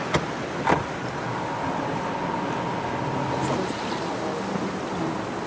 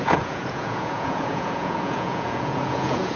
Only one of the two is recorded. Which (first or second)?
first